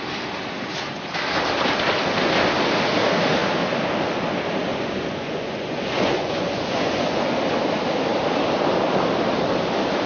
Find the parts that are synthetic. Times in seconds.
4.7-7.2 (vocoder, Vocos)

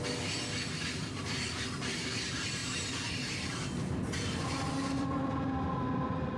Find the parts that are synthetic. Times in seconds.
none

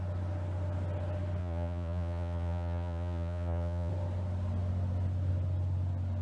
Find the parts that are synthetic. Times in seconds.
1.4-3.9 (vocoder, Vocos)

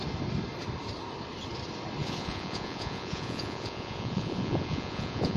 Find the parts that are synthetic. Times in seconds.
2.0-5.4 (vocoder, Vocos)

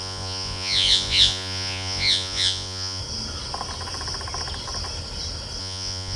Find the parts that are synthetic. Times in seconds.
0.0-3.0 (vocoder, Vocos); 5.6-6.2